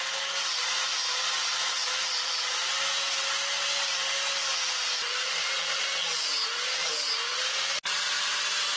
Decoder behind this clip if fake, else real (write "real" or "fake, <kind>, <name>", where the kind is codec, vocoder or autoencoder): real